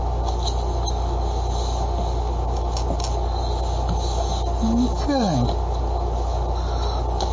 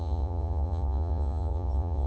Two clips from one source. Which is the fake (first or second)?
second